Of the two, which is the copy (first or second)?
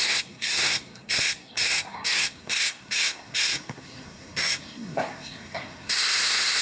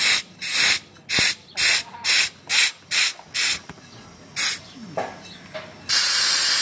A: first